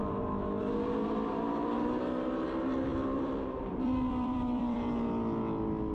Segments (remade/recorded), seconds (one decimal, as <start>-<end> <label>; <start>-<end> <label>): 0.0-2.9 recorded; 2.9-4.9 remade; 4.9-5.9 recorded